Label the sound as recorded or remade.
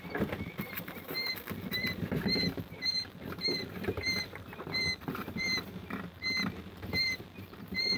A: remade